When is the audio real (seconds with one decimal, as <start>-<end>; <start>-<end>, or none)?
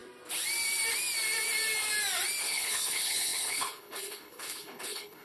0.0-2.4